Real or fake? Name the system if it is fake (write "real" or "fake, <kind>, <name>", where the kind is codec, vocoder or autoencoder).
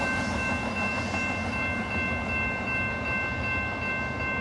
real